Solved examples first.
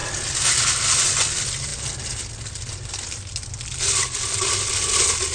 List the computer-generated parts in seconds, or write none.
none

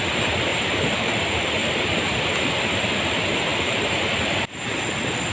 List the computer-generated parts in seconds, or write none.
0.5-1.1 (vocoder, BigVGAN v2); 1.6-2.6; 3.5-4.6

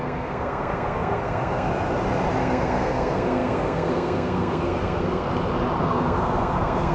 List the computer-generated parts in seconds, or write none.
0.0-1.7 (codec, SNAC); 2.4-5.3; 5.8-6.9